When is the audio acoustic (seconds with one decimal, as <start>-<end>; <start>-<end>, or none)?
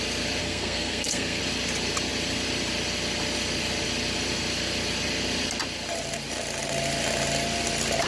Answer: 0.0-0.4; 1.4-8.1